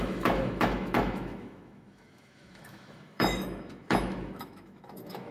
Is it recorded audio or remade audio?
remade